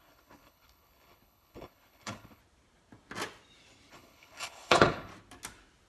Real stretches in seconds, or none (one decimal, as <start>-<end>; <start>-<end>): 2.4-3.9; 5.1-5.9